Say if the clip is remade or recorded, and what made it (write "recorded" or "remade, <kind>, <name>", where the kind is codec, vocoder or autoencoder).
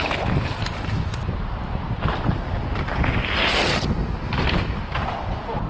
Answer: recorded